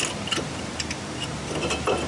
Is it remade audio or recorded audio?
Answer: recorded